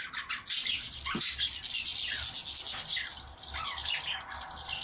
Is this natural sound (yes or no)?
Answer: yes